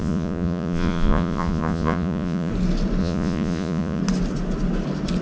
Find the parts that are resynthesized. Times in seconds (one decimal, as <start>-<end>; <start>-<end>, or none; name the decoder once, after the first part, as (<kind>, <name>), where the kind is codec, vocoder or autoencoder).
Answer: 0.0-2.5 (vocoder, Vocos); 3.0-4.0